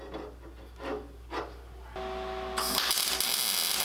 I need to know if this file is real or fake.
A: real